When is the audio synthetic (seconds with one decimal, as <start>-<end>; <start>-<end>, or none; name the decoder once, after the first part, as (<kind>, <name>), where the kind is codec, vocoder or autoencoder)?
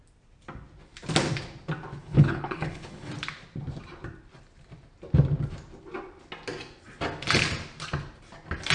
2.0-3.1 (codec, HILCodec)